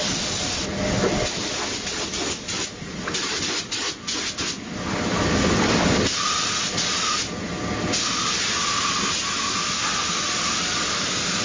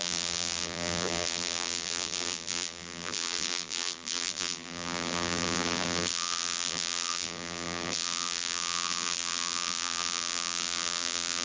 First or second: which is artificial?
second